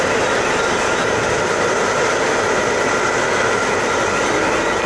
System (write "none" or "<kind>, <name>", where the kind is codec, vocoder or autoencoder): none